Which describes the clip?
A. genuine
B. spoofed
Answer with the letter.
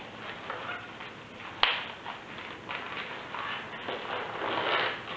A